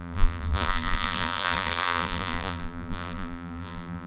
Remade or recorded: remade